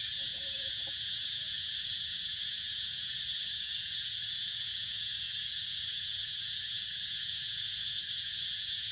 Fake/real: fake